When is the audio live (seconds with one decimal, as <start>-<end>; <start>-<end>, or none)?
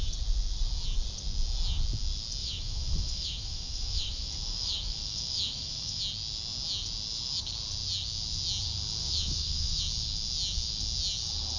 0.0-2.4; 6.0-9.0; 9.8-11.6